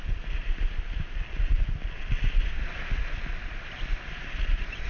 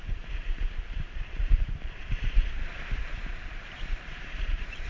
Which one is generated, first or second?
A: second